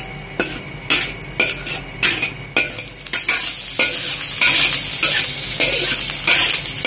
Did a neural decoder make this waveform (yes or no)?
no